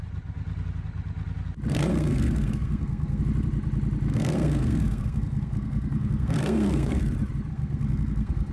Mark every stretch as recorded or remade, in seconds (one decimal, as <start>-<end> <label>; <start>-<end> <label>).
0.0-1.9 recorded; 1.9-3.2 remade; 3.2-4.1 recorded; 4.1-7.0 remade; 7.0-7.5 recorded; 7.5-8.5 remade